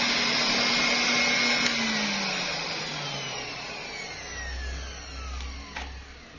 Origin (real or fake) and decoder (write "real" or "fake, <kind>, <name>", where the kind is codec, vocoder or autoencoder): real